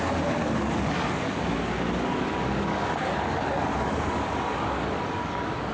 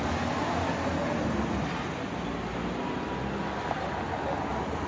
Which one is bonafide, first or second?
second